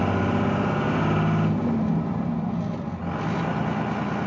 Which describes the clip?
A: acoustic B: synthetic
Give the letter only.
A